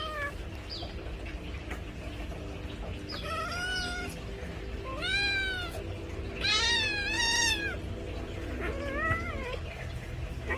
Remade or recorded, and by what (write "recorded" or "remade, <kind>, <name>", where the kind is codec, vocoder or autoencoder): recorded